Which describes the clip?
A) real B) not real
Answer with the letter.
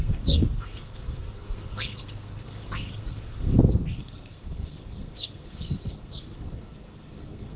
B